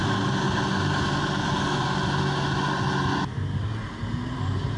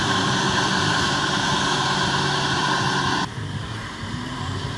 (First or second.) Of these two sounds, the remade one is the second